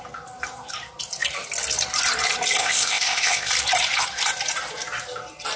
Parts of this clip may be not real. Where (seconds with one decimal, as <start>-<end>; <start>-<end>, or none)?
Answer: 2.6-3.5